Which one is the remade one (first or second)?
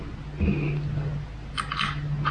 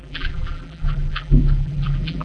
second